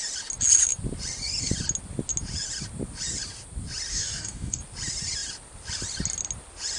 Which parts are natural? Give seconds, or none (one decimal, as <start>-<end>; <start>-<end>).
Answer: 0.0-3.9; 4.6-6.8